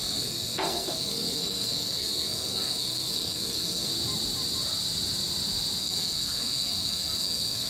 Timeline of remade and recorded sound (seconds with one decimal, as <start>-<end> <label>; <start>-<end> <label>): 0.0-3.9 remade; 3.9-5.8 recorded; 5.8-7.7 remade